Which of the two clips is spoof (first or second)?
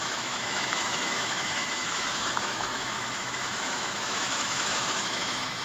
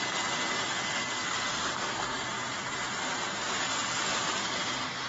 first